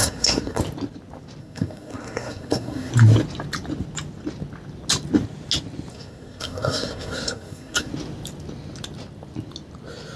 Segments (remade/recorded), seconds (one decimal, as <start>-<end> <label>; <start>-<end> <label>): 0.0-0.6 remade; 0.6-1.4 recorded; 1.4-2.9 remade; 2.9-5.9 recorded; 5.9-7.9 remade; 7.9-10.2 recorded